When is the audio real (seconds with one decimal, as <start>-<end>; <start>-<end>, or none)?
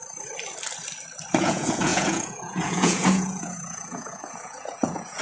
0.0-1.4